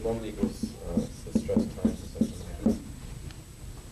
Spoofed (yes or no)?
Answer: no